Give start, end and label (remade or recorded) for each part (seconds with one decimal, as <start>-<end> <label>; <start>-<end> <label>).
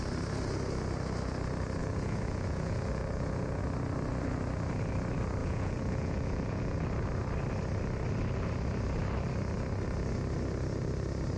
0.0-1.8 recorded; 1.8-3.6 remade; 3.6-5.4 recorded; 5.4-6.8 remade; 6.8-11.4 recorded